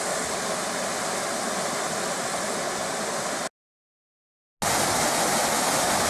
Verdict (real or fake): real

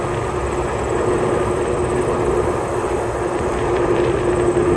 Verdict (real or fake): real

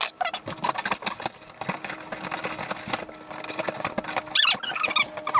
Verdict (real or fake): real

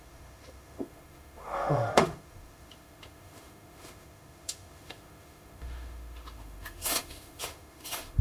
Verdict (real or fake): fake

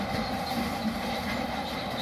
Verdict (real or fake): real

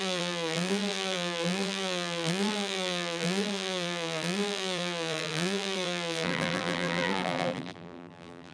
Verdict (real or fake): fake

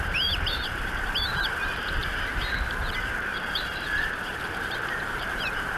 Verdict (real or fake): fake